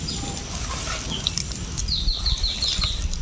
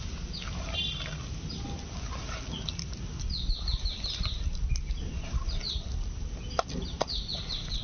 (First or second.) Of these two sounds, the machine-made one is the first